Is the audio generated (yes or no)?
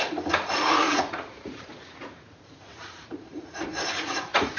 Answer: yes